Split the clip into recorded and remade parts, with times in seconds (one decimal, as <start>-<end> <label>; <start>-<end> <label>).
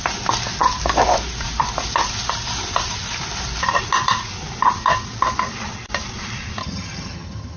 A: 0.0-6.6 recorded; 6.6-7.6 remade